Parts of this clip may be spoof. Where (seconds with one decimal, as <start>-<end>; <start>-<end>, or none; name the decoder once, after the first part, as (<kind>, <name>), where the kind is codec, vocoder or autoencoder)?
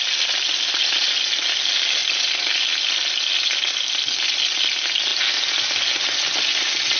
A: none